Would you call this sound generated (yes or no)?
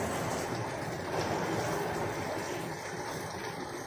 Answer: no